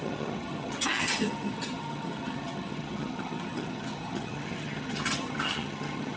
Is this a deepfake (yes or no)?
yes